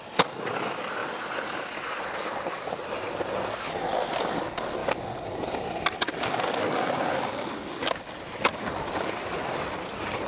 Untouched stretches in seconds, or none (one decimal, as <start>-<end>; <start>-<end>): 0.0-10.3